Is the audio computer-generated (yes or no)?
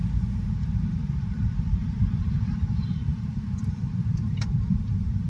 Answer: yes